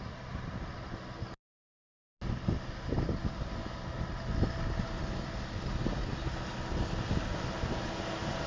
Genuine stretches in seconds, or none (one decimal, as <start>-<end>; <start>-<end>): 0.0-8.5